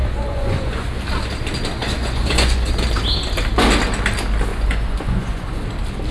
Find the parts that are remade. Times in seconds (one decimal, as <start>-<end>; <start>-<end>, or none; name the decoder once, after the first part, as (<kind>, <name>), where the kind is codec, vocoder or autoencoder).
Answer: 0.0-0.9 (vocoder, Vocos); 1.8-2.7; 4.5-5.6